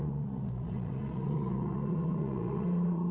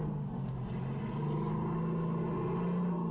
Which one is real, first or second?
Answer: second